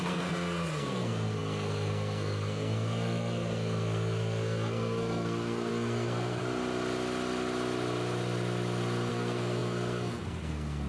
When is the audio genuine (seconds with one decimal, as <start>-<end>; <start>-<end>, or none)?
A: 6.4-9.1